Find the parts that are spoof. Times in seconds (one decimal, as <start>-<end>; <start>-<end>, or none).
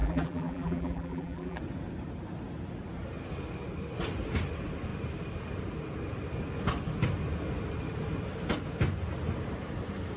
0.0-1.6